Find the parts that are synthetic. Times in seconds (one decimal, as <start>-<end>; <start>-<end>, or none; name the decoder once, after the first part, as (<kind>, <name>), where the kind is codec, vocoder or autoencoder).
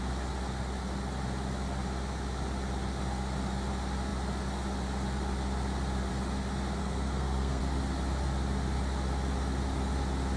6.8-7.6 (codec, SNAC)